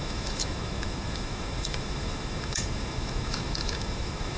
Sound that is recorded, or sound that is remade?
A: remade